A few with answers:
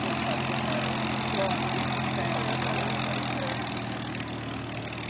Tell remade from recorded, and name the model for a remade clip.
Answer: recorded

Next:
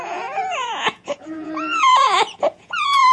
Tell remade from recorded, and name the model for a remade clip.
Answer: remade, vocoder, Vocos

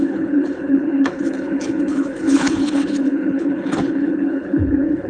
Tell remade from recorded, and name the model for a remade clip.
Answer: remade, codec, HILCodec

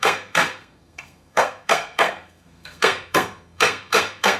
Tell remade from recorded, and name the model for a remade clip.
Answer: remade, codec, SNAC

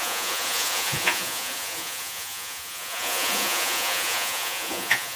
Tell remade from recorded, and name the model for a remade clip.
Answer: remade, vocoder, Vocos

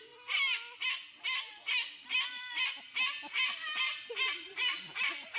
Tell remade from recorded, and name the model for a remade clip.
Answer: recorded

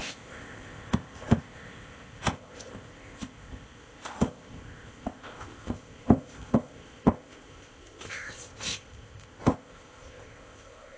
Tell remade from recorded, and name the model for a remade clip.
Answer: remade, codec, ZipCodec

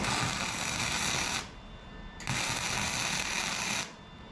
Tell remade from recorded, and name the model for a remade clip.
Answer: recorded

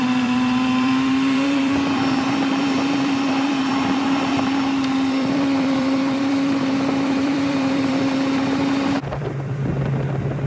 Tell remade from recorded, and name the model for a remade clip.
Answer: remade, vocoder, BigVGAN v2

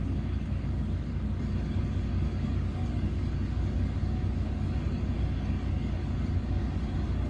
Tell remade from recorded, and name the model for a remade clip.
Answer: remade, codec, DAC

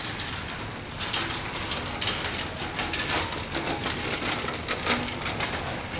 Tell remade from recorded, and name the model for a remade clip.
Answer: recorded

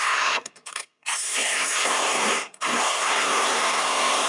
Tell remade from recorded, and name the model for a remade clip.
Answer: remade, codec, SNAC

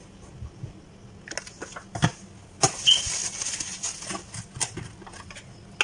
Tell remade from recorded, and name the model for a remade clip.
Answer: recorded